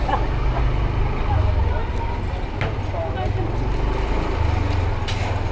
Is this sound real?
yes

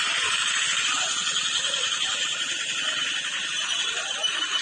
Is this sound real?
yes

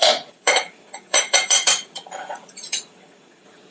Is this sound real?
no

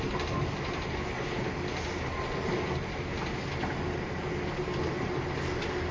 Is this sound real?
yes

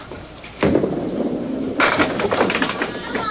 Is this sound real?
no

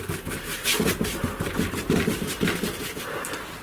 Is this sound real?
yes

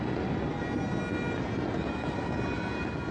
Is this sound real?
yes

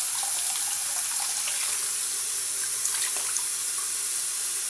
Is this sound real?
yes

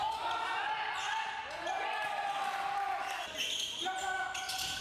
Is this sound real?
yes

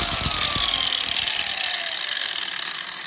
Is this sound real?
yes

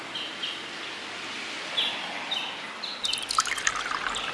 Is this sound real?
yes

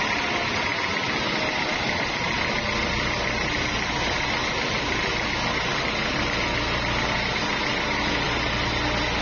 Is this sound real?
yes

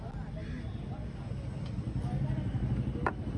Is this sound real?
yes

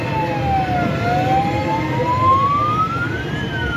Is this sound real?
yes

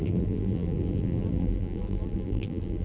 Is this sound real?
no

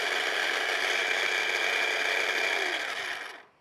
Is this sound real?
yes